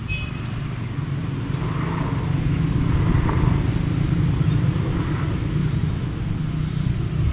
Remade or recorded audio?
recorded